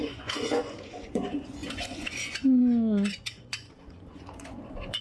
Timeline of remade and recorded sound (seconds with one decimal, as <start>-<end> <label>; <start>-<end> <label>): 0.0-5.0 remade